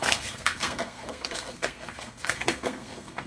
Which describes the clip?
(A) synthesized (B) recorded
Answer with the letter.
A